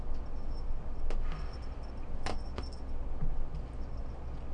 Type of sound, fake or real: real